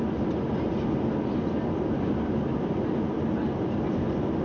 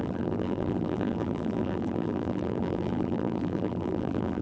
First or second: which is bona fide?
first